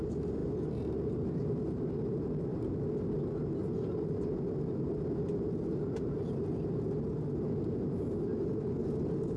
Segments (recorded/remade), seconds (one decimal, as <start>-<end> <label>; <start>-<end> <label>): 0.0-9.4 recorded